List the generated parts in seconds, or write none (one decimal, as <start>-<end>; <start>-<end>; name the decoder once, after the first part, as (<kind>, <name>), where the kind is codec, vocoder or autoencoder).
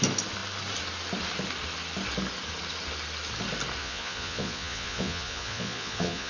3.8-6.3 (vocoder, Vocos)